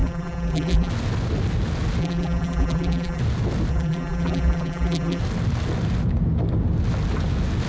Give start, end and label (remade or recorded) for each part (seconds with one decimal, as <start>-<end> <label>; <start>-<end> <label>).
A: 0.0-0.9 remade; 0.9-2.0 recorded; 2.0-3.2 remade; 3.2-3.7 recorded; 3.7-5.2 remade; 5.2-7.7 recorded